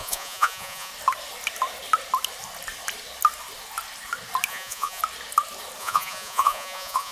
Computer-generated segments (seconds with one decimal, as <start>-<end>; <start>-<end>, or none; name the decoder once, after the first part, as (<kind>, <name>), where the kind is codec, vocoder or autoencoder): 0.0-0.9 (vocoder, Vocos); 4.5-5.0; 5.8-7.1